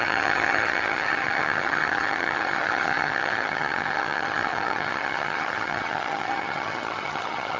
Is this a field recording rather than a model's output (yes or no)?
no